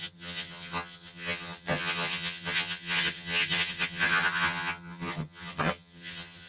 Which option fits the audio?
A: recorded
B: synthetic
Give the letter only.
B